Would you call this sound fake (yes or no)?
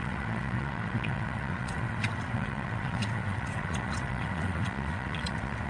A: yes